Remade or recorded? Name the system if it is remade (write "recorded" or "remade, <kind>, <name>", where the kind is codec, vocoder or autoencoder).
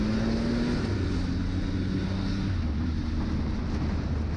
recorded